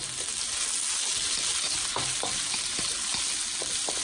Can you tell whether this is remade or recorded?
recorded